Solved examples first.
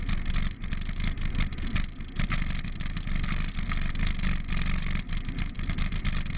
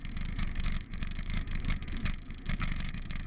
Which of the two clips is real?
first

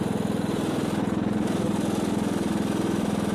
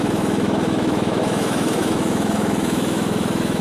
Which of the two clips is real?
first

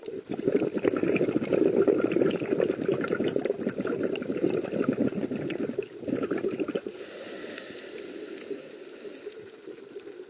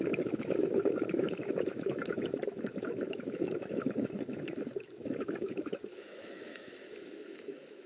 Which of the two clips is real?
first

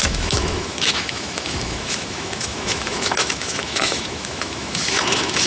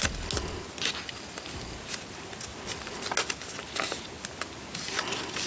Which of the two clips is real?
second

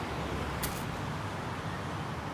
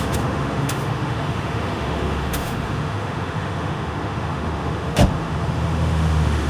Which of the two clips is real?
first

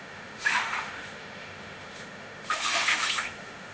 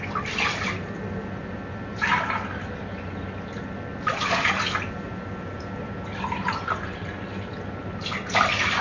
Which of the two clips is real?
second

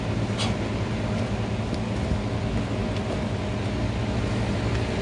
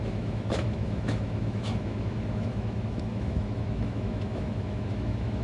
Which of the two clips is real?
first